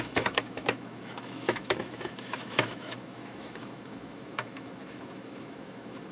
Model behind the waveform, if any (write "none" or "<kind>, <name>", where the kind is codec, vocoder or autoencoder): autoencoder, DAC-VAE